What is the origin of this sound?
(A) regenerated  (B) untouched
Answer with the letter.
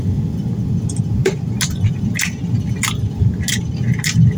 B